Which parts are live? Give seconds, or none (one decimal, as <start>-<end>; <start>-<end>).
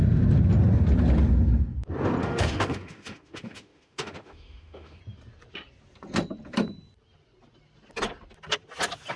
0.0-2.2; 5.0-9.2